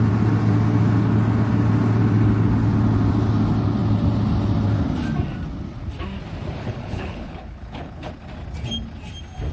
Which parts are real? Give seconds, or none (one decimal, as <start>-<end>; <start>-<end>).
0.0-6.6; 8.1-9.5